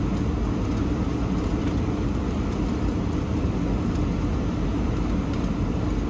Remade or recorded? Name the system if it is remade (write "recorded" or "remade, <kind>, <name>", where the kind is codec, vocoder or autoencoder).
recorded